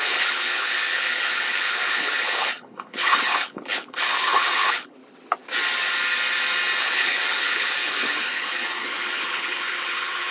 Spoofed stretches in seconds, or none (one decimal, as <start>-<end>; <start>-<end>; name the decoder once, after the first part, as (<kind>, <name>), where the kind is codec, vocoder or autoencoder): 0.0-5.0 (codec, HILCodec); 6.8-10.3